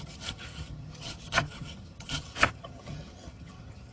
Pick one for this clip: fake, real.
fake